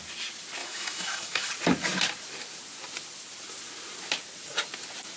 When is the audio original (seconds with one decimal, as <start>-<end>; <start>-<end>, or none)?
0.0-0.6; 1.5-5.2